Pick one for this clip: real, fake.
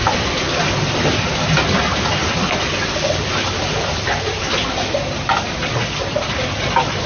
real